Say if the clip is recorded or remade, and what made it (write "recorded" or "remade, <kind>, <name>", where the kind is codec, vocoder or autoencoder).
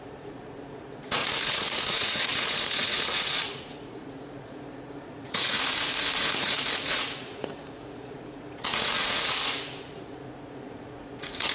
remade, vocoder, Vocos